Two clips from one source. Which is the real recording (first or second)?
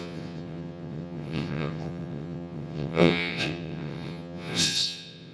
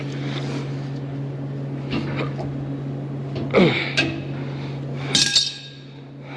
second